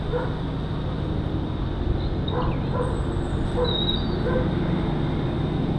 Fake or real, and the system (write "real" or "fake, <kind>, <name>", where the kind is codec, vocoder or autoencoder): real